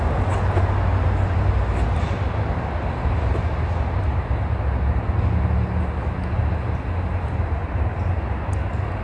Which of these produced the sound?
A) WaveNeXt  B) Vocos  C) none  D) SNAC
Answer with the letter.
C